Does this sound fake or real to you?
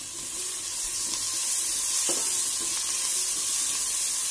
real